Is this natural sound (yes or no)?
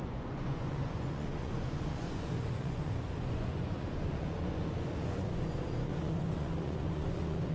no